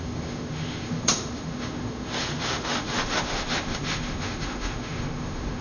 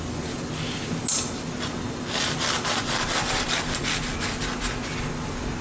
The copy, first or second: first